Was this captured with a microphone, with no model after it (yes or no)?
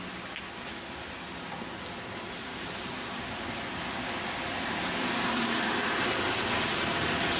yes